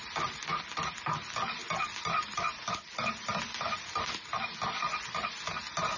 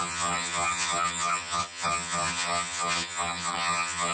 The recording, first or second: first